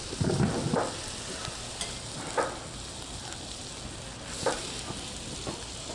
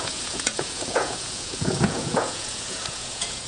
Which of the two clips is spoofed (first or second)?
second